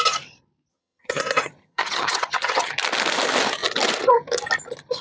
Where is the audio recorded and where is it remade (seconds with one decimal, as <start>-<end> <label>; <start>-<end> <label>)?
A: 0.0-0.7 recorded; 0.7-1.2 remade; 1.2-1.6 recorded; 1.6-2.7 remade; 2.7-5.0 recorded